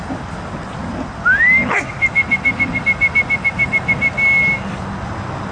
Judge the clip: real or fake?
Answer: real